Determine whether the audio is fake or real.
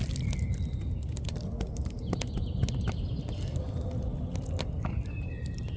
real